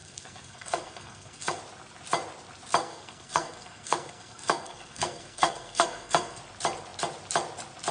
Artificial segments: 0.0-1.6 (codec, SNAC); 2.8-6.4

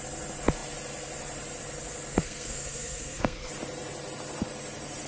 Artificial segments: 2.1-3.5 (codec, SNAC)

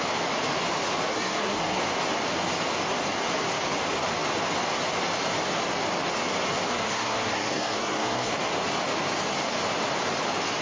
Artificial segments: 1.1-1.8 (codec, SNAC); 6.7-8.3

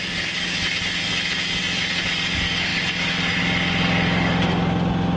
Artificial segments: none

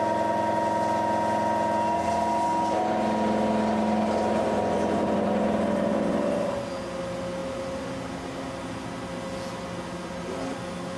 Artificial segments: none

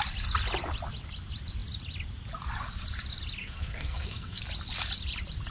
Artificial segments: 3.4-4.4 (codec, SNAC)

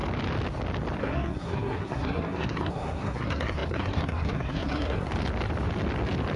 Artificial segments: 1.0-5.1 (codec, SNAC)